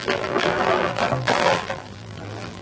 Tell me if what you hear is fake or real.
fake